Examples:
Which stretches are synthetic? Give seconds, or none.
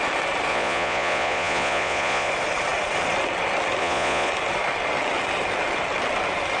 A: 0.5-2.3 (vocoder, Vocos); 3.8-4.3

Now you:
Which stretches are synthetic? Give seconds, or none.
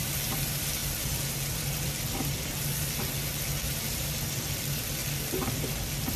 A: none